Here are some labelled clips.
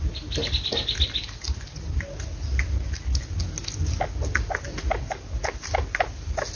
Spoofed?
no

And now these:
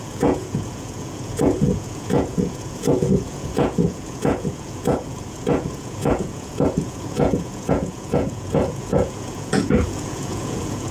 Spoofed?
yes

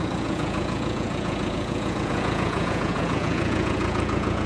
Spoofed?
yes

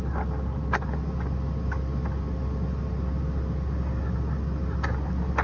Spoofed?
no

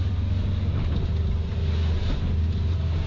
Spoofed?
no